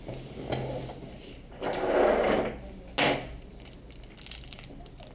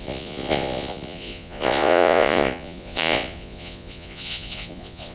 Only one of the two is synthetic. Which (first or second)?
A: second